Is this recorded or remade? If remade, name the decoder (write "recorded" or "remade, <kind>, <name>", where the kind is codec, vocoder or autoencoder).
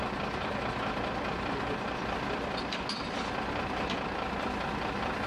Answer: recorded